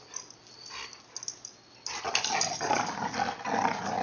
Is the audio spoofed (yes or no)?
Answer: no